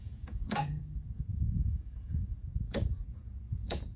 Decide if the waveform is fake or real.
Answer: fake